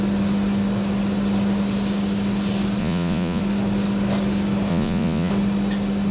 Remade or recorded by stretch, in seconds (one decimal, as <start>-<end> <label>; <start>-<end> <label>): 0.0-2.8 recorded; 2.8-3.4 remade; 3.4-4.7 recorded; 4.7-5.3 remade; 5.3-6.1 recorded